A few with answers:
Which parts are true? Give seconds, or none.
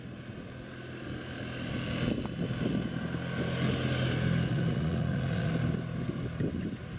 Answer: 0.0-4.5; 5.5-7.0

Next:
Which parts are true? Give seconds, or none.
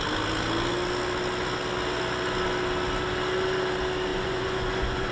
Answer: 0.0-4.1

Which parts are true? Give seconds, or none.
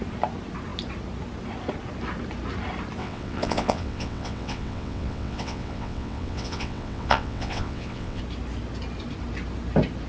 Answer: 0.0-3.0; 8.2-10.1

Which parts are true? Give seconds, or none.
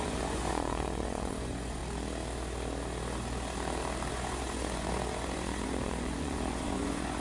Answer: 1.8-4.1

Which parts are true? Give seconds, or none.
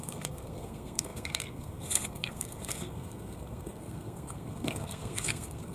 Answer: none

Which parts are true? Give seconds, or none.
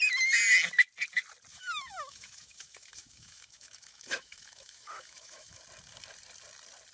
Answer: 0.0-1.5; 5.6-6.9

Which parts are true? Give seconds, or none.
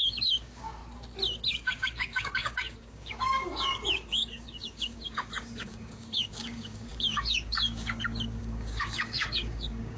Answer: 0.8-1.5